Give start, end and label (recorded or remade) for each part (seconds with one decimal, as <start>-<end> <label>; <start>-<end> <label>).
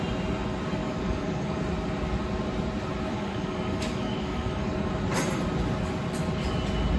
0.0-0.8 recorded; 0.8-1.6 remade; 1.6-3.1 recorded; 3.1-4.9 remade; 4.9-7.0 recorded